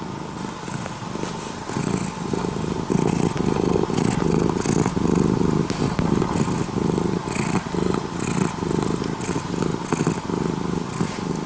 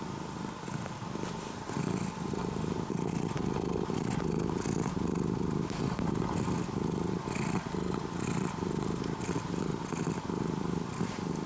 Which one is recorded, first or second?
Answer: first